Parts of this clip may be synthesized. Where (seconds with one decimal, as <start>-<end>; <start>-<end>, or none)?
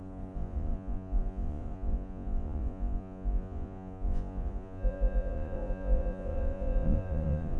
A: 0.0-7.6